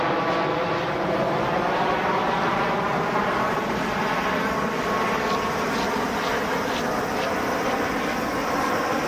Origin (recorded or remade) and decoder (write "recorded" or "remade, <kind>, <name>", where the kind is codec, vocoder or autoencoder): recorded